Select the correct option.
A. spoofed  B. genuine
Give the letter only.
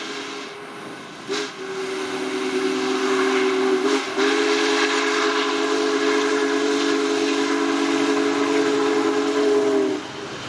B